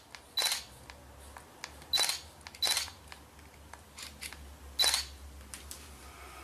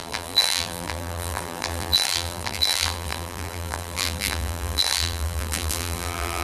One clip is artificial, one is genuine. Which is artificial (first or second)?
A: second